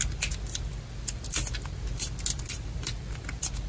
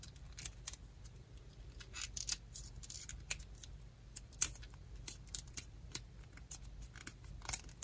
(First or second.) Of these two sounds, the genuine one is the first